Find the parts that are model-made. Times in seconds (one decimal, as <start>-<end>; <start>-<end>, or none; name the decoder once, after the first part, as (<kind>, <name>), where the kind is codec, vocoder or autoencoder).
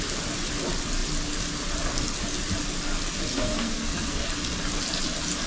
3.3-4.2 (codec, SNAC)